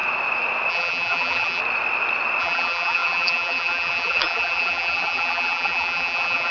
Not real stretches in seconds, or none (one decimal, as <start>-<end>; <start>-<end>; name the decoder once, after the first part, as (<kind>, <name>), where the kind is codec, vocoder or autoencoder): 0.7-1.6 (vocoder, BigVGAN v2); 2.4-6.5